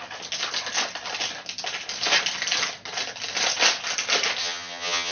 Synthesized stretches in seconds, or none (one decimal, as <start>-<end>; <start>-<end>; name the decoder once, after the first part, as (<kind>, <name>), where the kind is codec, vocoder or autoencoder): 4.4-5.1 (vocoder, HiFi-GAN)